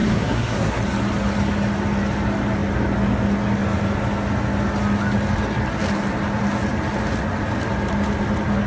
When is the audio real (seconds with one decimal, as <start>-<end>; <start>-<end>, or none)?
0.8-8.7